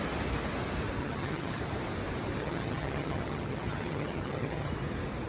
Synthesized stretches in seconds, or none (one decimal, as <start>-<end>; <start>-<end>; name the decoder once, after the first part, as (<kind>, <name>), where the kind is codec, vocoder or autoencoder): 1.0-1.6 (vocoder, HiFi-GAN); 2.4-4.7